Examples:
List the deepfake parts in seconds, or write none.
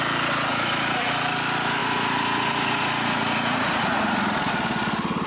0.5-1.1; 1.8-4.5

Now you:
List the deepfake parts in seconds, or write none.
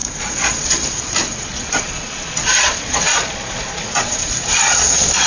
0.0-5.3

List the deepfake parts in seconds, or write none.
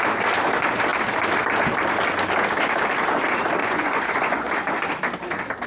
3.6-4.5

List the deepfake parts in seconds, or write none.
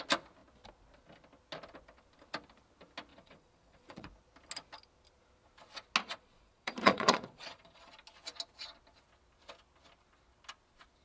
3.1-4.1; 6.0-7.9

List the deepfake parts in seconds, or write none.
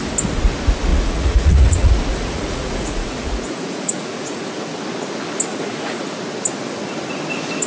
0.9-4.5; 5.5-6.0